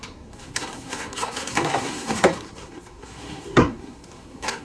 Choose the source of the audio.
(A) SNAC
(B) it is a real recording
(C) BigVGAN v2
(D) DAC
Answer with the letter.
A